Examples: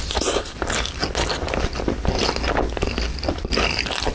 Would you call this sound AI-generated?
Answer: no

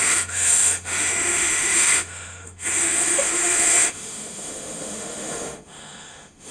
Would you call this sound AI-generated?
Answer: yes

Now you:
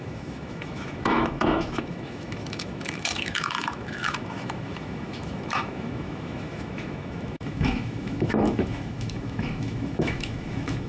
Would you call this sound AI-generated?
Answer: yes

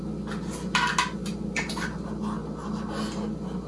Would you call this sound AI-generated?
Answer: no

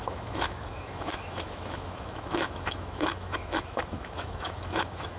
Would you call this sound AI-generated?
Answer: yes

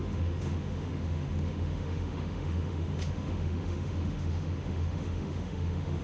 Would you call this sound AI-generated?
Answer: yes